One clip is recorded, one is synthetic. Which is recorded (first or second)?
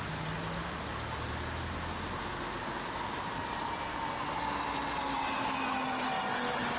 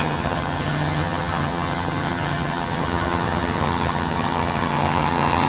first